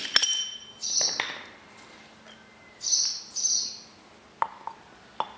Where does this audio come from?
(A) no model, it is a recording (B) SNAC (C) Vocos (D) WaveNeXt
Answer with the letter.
A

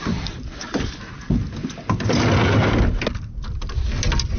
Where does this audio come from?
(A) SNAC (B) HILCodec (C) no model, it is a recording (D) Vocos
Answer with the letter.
C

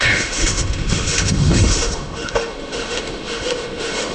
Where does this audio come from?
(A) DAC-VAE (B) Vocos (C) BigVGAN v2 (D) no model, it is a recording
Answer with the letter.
A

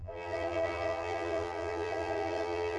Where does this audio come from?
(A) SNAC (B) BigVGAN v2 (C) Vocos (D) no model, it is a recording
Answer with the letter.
B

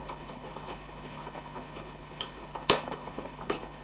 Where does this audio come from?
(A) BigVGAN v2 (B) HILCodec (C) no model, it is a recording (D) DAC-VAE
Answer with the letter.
B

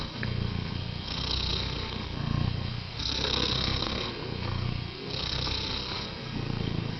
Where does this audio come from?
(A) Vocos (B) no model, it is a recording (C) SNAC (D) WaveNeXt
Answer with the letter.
C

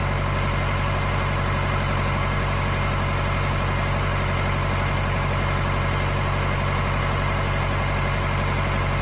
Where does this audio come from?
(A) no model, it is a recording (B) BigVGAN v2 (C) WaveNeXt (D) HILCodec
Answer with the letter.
A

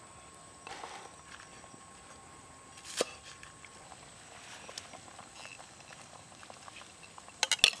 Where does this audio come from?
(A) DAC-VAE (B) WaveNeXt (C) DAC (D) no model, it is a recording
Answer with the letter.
D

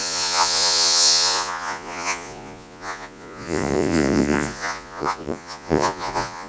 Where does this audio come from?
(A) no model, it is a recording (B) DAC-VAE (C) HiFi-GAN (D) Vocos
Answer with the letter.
D